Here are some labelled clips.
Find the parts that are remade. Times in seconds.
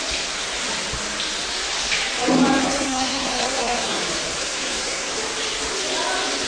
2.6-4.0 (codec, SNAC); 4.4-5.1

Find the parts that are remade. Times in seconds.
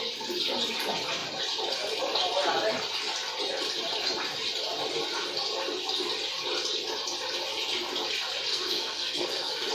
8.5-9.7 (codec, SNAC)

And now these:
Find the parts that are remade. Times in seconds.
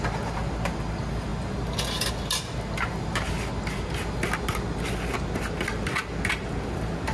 none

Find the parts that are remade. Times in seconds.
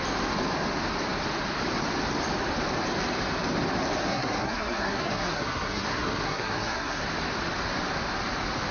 4.0-7.0 (codec, SNAC)